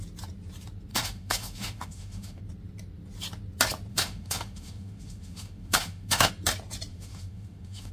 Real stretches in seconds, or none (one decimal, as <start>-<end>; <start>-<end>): 0.0-0.9; 2.4-3.9; 6.3-6.9